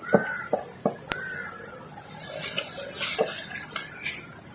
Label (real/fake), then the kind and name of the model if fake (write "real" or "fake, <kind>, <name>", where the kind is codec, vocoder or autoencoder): real